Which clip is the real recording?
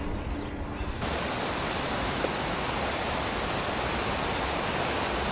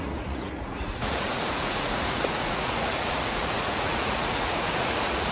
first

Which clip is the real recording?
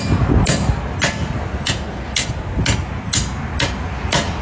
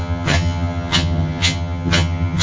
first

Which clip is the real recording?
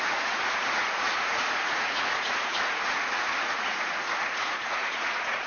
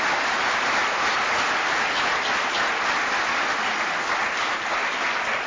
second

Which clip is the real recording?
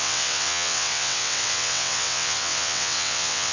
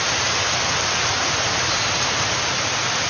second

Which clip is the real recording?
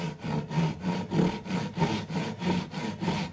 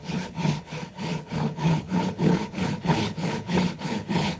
first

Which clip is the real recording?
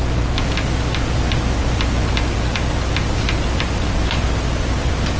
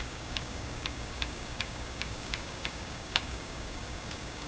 first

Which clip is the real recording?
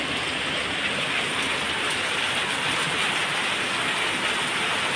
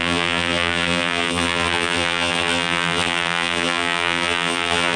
first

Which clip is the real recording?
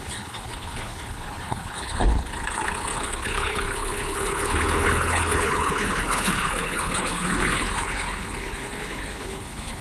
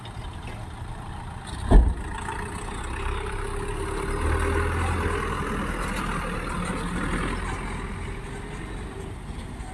second